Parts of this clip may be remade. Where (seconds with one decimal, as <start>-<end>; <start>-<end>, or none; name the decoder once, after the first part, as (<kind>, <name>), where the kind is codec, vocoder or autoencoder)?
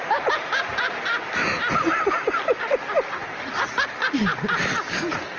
none